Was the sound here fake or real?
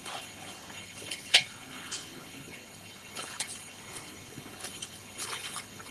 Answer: fake